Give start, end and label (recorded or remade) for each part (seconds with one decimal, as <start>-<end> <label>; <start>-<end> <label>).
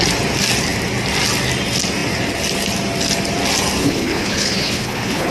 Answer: 0.0-3.8 recorded; 3.8-5.3 remade